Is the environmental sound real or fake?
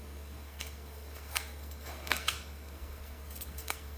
fake